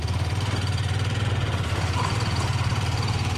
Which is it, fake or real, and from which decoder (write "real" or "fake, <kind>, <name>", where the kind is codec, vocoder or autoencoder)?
fake, vocoder, BigVGAN v2